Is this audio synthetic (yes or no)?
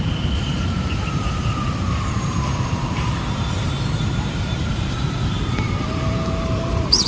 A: yes